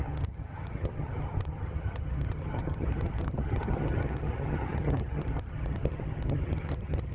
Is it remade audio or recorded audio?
remade